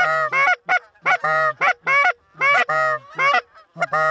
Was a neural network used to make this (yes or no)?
no